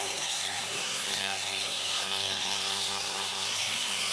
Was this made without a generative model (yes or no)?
no